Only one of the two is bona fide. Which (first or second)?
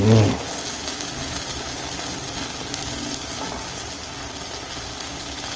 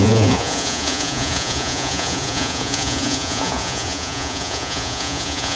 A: first